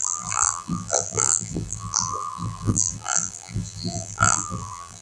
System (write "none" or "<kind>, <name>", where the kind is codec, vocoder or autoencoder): vocoder, BigVGAN v2